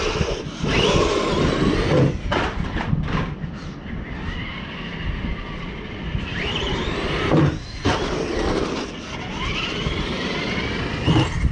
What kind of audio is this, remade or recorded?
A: remade